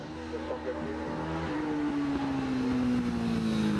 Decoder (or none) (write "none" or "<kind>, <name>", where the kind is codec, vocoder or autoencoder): none